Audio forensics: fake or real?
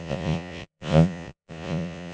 fake